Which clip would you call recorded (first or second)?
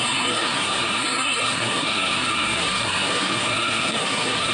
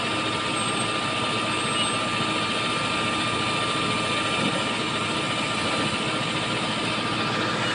second